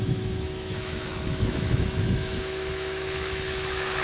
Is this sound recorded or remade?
remade